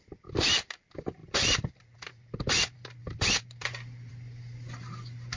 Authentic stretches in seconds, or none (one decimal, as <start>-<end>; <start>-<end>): 0.0-5.4